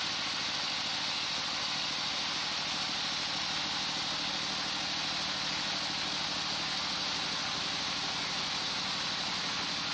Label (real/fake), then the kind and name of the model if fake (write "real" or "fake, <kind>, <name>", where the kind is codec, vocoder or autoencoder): real